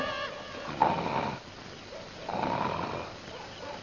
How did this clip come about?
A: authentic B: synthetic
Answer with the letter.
A